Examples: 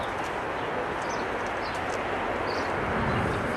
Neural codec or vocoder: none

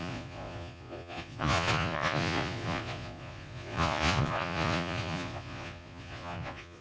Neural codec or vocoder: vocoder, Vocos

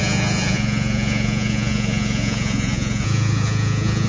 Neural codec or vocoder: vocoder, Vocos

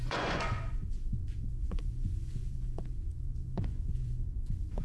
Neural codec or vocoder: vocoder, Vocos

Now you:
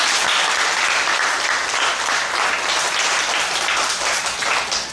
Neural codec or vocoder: none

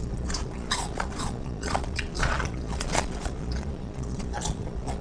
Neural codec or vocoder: vocoder, Vocos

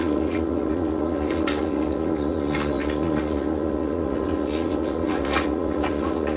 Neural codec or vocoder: vocoder, Vocos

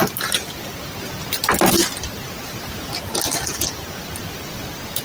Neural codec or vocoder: none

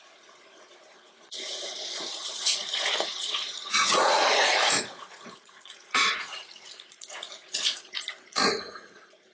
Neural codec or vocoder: vocoder, Vocos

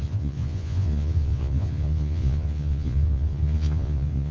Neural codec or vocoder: vocoder, Vocos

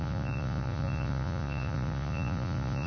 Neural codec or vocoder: vocoder, Vocos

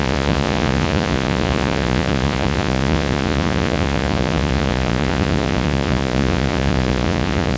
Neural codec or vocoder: vocoder, Vocos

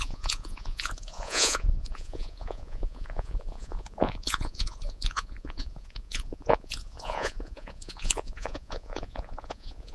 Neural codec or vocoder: vocoder, Vocos